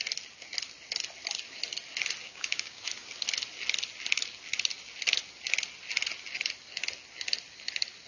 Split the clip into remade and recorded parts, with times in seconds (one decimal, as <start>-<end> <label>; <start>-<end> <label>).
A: 0.0-2.2 recorded; 2.2-2.8 remade; 2.8-8.1 recorded